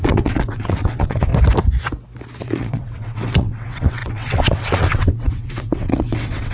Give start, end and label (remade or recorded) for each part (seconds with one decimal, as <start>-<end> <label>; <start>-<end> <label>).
0.0-1.3 remade; 1.3-2.4 recorded; 2.4-6.5 remade